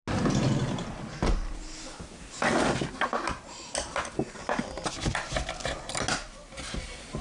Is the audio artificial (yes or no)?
no